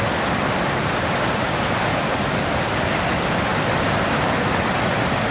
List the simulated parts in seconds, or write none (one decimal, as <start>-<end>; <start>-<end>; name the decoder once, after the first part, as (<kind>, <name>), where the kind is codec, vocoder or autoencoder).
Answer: none